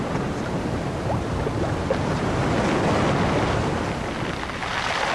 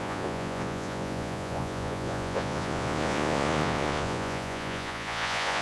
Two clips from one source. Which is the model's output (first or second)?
second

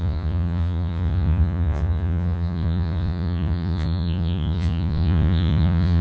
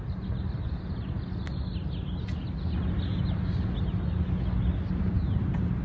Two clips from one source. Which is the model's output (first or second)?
first